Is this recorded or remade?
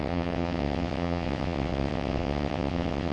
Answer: remade